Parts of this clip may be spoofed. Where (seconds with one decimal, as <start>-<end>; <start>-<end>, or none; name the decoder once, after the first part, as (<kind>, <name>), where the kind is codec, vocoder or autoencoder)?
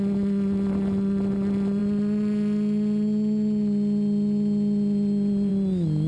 none